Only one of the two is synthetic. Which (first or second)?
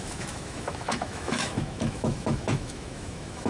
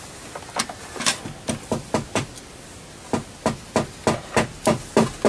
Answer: first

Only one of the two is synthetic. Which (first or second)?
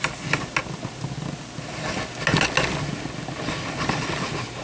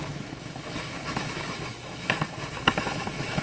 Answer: second